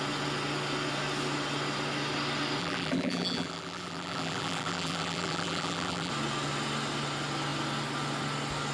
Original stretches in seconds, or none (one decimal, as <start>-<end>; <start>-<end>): 0.0-2.6; 6.1-8.7